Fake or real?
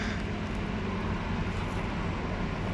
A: real